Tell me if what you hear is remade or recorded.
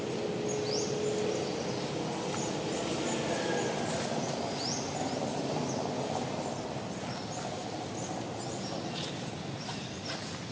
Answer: recorded